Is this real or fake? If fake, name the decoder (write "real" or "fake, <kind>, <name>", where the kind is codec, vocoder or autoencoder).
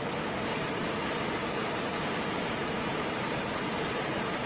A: real